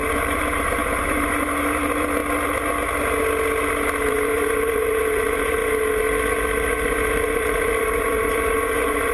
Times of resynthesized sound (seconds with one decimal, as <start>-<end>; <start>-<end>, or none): 0.0-2.2; 4.1-5.6; 6.7-9.1